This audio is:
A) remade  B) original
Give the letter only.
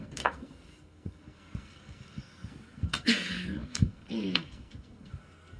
A